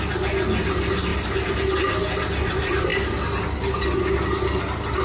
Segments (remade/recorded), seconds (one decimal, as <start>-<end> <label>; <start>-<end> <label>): 0.0-5.0 recorded